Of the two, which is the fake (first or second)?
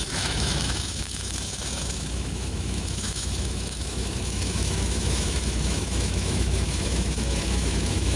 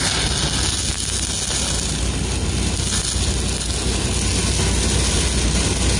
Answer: first